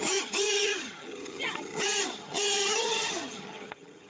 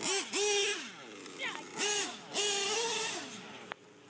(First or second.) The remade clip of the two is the first